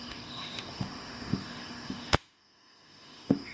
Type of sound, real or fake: fake